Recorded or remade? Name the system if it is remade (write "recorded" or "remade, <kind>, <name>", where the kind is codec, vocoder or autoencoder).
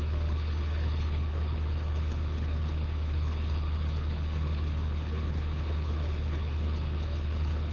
remade, codec, HILCodec